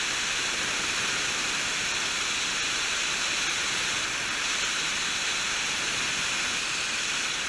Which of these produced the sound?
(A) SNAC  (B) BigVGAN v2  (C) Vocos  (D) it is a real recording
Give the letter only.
D